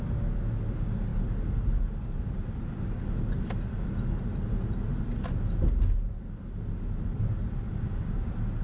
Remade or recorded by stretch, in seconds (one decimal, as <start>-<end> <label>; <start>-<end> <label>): 0.0-8.6 recorded